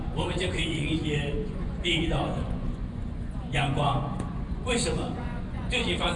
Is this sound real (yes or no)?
no